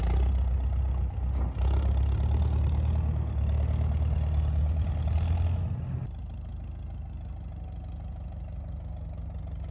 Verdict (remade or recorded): recorded